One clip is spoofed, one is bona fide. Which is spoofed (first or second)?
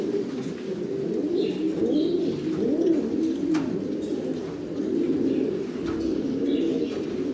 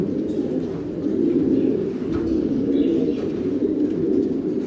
second